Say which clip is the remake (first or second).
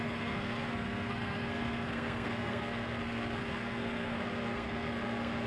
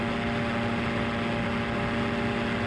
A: first